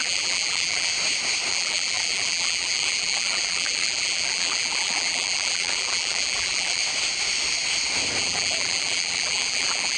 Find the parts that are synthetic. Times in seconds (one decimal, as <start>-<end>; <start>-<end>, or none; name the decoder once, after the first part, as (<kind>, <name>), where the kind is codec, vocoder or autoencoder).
0.0-0.9 (vocoder, BigVGAN v2); 1.5-6.8; 8.2-10.0